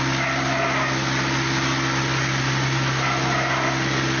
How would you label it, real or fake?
real